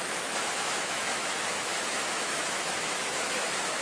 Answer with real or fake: fake